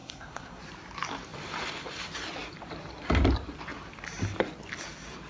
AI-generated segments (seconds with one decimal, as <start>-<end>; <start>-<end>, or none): 0.0-0.6